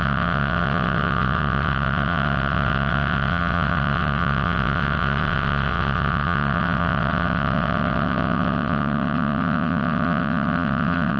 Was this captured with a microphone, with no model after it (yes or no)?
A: no